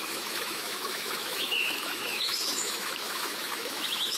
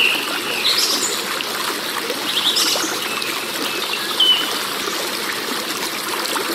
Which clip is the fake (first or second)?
first